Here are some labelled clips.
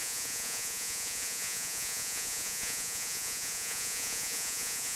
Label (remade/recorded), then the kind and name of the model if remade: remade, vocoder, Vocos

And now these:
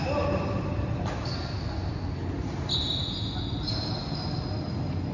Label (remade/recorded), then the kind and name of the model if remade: recorded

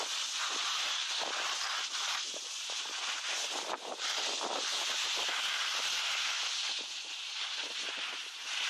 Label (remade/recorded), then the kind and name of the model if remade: recorded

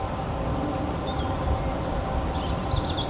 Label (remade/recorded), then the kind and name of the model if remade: recorded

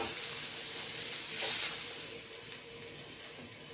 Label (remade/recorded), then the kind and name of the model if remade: recorded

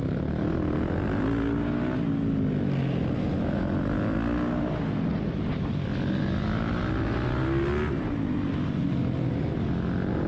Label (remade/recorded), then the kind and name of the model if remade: recorded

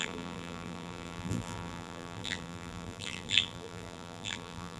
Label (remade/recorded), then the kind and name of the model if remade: remade, vocoder, BigVGAN v2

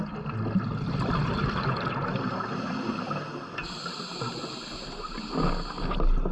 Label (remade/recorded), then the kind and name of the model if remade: recorded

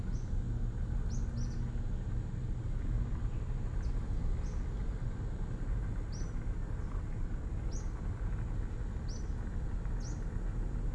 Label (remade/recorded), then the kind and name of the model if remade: recorded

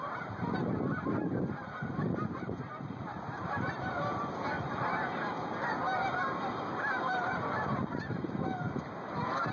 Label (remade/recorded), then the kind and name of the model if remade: remade, vocoder, BigVGAN v2